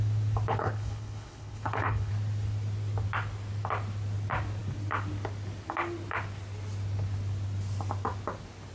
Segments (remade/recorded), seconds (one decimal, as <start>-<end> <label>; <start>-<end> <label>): 0.0-0.5 recorded; 0.5-2.1 remade; 2.1-8.7 recorded